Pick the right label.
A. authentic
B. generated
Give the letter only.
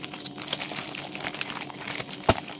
A